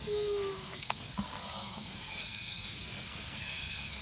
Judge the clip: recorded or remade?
remade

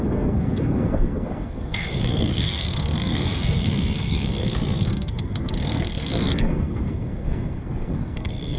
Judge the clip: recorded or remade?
remade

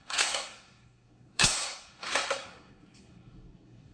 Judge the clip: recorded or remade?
remade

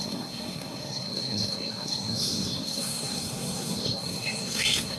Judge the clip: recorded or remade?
remade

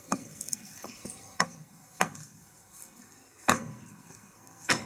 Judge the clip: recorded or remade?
remade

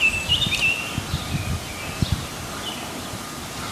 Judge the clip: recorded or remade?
recorded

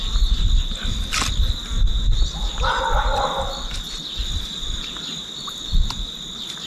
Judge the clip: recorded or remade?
recorded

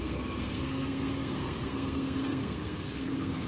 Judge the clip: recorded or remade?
remade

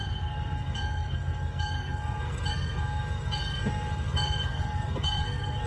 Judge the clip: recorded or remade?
remade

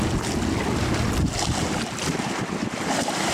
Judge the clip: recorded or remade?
recorded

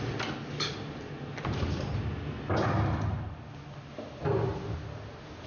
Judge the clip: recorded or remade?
recorded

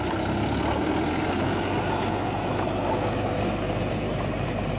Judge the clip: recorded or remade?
recorded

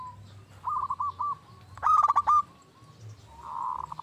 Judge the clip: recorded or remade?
recorded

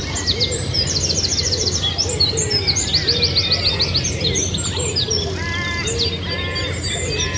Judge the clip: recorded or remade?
recorded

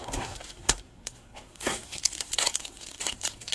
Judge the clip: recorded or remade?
remade